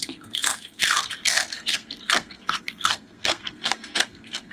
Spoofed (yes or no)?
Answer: yes